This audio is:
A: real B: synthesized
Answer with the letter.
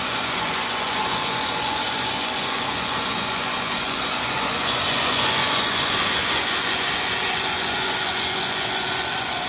B